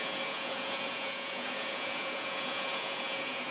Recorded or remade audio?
remade